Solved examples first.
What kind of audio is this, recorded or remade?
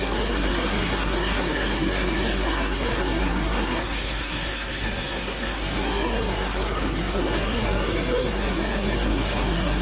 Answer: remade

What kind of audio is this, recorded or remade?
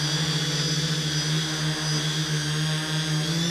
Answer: recorded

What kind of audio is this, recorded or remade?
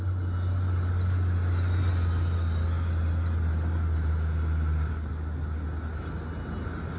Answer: recorded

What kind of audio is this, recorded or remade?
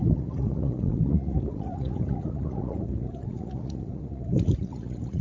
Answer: remade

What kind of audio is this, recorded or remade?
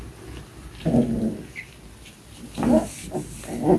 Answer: recorded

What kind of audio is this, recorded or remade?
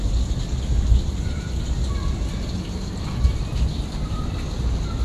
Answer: recorded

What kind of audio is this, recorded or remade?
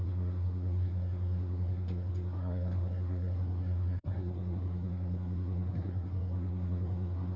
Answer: remade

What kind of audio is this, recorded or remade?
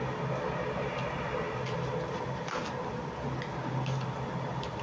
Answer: recorded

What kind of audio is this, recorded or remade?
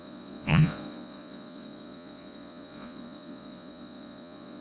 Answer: remade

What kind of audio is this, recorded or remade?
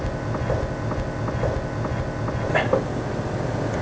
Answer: recorded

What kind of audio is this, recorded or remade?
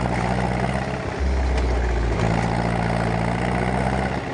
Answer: recorded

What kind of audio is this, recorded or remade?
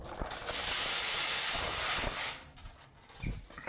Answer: recorded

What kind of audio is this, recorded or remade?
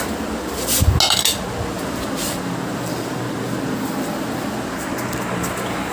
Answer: recorded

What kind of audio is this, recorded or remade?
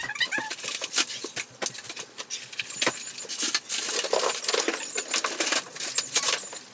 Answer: recorded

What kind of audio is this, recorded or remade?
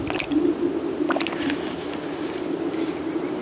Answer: recorded